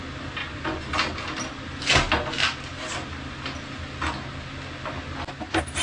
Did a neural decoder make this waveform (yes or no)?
no